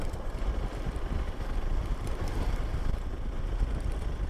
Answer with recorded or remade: recorded